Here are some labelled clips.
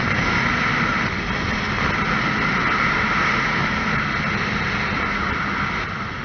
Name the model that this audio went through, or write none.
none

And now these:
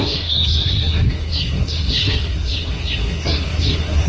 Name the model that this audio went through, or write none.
codec, SNAC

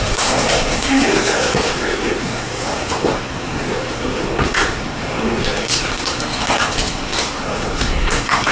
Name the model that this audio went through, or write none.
codec, SNAC